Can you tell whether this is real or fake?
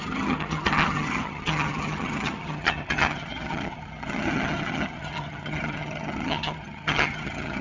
fake